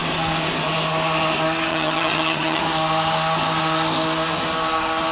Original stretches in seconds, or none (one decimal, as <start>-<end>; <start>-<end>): 0.0-1.7; 2.6-5.1